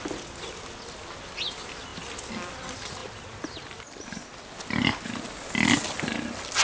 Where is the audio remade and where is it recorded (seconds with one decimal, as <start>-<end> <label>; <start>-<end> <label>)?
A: 0.0-6.6 recorded